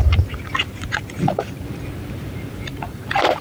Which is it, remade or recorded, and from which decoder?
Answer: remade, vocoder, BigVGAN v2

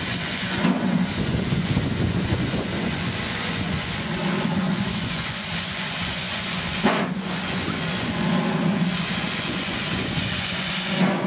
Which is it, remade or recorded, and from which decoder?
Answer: remade, vocoder, Vocos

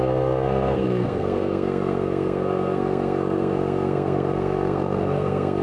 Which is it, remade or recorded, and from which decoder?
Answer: remade, codec, SNAC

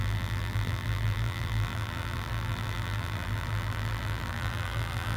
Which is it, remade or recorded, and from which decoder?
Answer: remade, vocoder, BigVGAN v2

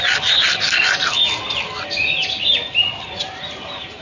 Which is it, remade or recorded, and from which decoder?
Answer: recorded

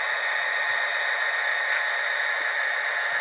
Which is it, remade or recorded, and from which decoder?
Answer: recorded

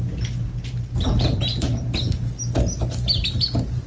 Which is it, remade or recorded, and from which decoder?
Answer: recorded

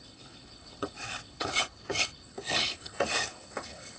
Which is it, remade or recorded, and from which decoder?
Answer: remade, codec, HILCodec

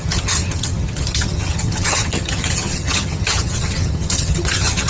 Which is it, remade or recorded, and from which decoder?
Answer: remade, vocoder, HiFi-GAN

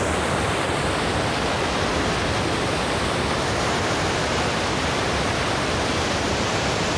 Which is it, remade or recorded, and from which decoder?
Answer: recorded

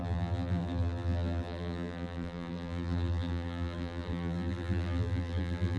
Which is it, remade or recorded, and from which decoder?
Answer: remade, vocoder, BigVGAN v2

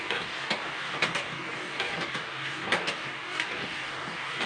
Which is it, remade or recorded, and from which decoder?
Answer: remade, codec, DAC